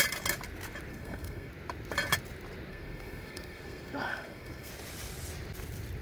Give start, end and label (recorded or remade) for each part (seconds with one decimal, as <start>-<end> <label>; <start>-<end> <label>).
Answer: 0.0-0.9 recorded; 0.9-1.5 remade; 1.5-2.7 recorded; 2.7-4.7 remade; 4.7-6.0 recorded